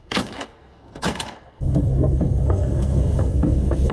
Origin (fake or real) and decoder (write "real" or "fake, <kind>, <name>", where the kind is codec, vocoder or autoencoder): fake, codec, SNAC